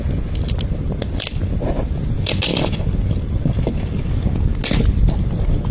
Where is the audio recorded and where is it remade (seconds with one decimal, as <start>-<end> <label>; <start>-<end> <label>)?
0.0-5.7 recorded